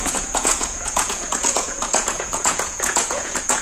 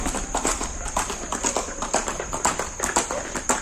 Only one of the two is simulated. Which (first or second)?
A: first